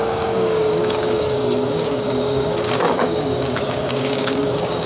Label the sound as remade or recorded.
remade